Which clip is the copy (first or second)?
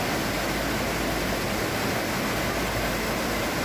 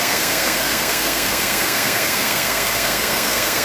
second